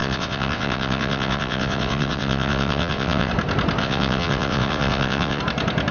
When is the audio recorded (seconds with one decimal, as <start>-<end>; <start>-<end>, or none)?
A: 3.3-3.8; 5.4-5.9